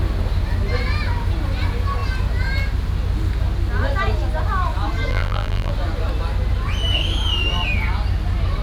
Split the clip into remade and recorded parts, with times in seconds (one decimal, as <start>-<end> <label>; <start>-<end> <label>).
0.0-5.1 recorded; 5.1-5.7 remade; 5.7-8.6 recorded